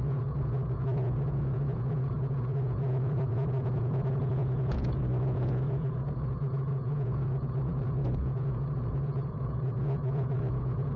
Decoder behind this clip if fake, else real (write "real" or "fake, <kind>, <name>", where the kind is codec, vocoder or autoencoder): fake, vocoder, Vocos